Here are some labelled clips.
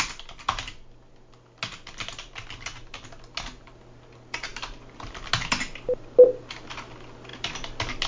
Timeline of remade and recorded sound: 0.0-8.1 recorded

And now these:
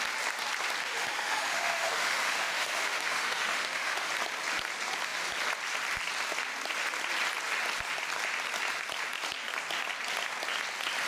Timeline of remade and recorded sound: 0.0-0.8 recorded; 0.8-4.1 remade; 4.1-11.1 recorded

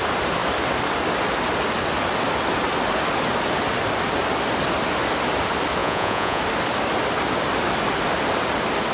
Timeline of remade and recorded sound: 0.0-5.8 recorded; 5.8-6.4 remade; 6.4-8.9 recorded